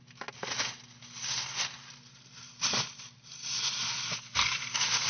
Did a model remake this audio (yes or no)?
no